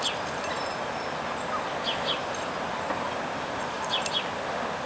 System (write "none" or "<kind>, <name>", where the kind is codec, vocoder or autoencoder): none